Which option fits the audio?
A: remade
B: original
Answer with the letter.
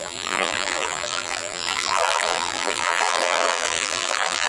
A